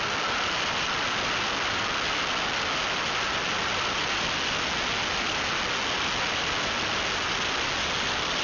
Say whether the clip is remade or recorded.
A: recorded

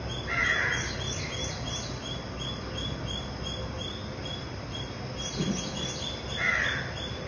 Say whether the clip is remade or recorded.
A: recorded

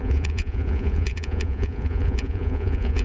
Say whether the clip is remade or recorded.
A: remade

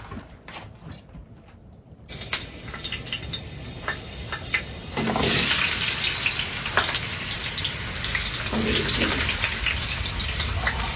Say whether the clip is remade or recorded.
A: recorded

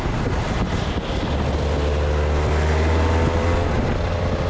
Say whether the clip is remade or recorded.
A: recorded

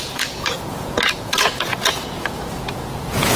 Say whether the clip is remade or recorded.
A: remade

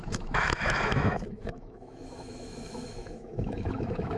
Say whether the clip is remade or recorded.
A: remade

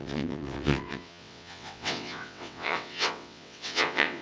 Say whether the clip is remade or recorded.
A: remade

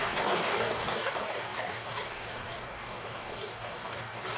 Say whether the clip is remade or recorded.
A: remade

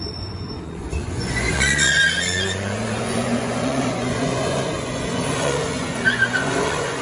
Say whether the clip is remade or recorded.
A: remade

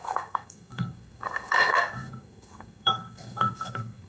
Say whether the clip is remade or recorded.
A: remade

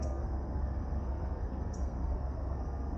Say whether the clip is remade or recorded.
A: remade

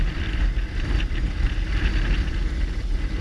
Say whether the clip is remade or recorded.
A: remade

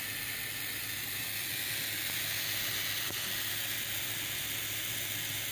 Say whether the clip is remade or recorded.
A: recorded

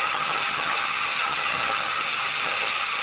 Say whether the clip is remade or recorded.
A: remade